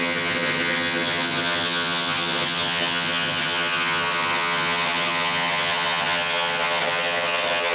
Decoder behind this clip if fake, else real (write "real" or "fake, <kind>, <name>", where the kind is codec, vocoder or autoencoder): fake, vocoder, HiFi-GAN